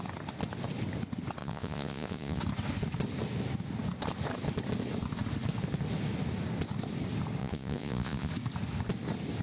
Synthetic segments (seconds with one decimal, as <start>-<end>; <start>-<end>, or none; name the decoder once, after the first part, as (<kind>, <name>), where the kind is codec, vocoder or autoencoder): 1.4-2.4 (vocoder, Vocos); 7.4-8.3